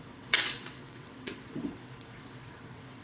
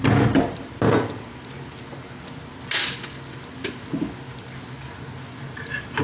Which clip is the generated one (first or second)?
first